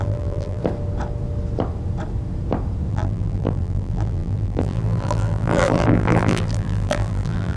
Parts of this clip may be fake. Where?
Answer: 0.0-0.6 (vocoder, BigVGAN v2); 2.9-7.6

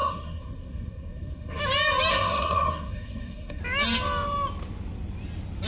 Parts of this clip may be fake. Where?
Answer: 0.0-1.6 (codec, SNAC); 2.1-3.6